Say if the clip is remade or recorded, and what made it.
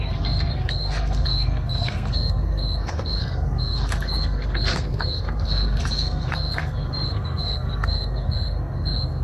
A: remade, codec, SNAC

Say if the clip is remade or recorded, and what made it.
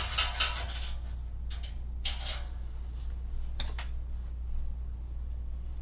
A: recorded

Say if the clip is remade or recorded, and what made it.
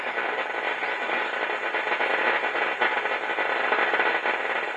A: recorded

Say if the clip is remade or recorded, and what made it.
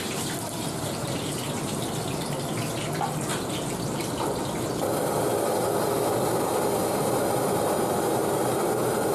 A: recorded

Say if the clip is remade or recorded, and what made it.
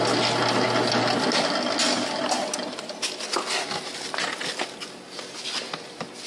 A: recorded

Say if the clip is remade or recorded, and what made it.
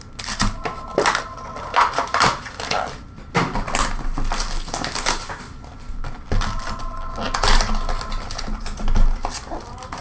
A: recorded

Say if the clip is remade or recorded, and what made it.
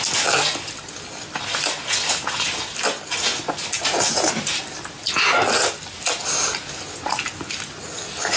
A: recorded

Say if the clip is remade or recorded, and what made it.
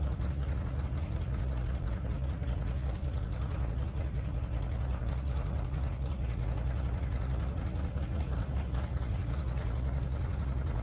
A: remade, vocoder, Vocos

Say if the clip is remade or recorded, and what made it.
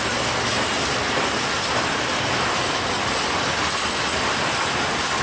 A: recorded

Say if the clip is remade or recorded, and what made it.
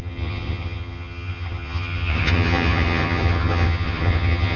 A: remade, vocoder, HiFi-GAN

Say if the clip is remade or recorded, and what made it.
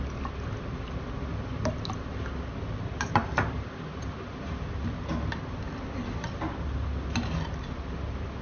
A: recorded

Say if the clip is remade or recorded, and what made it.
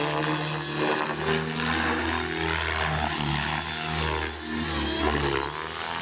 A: recorded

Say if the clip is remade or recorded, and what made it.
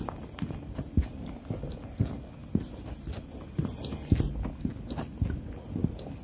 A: recorded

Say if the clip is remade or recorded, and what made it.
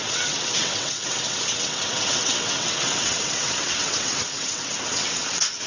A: remade, vocoder, WaveNeXt